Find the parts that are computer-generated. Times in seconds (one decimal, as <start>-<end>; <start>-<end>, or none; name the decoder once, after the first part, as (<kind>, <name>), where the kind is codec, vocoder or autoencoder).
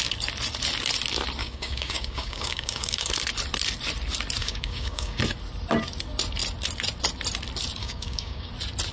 1.4-3.1 (codec, DAC); 4.4-5.2; 7.8-8.5